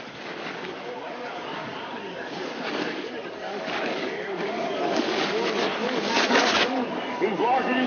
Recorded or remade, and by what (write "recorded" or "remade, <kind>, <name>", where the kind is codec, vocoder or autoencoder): remade, codec, DAC